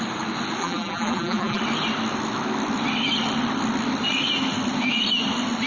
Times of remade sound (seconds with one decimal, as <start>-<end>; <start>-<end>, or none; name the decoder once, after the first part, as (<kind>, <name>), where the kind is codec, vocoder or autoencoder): 0.6-1.6 (vocoder, BigVGAN v2)